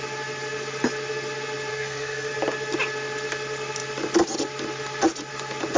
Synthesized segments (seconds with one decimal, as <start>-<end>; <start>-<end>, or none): 1.7-2.3